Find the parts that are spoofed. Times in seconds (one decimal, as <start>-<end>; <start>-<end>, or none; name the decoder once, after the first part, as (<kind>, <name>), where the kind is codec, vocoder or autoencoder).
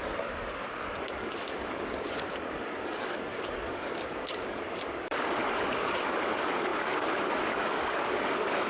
0.0-8.7 (codec, DAC)